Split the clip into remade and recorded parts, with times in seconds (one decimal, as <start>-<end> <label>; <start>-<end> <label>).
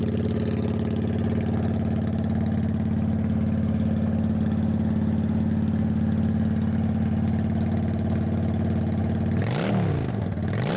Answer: 0.0-10.8 recorded